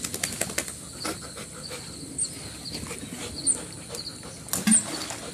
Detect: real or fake real